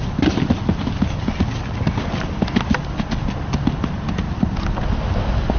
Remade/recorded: recorded